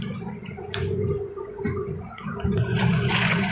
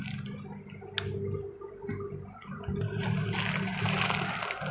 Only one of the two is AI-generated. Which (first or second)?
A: first